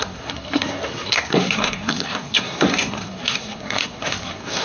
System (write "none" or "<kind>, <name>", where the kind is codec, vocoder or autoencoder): codec, SNAC